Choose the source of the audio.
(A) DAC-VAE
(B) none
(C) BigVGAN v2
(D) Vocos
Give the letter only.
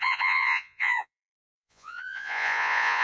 D